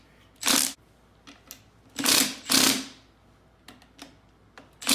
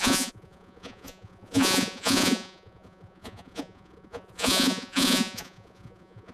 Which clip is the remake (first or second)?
second